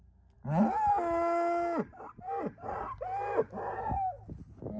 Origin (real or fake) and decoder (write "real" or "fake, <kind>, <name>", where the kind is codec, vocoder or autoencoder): real